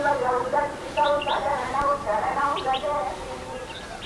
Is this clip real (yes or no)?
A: yes